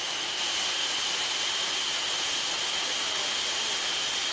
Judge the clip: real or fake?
real